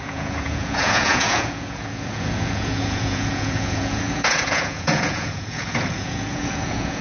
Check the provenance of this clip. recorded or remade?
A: remade